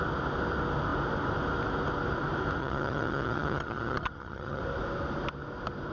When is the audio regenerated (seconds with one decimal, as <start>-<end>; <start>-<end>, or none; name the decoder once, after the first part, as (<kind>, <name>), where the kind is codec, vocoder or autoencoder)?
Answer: 2.6-4.6 (vocoder, HiFi-GAN)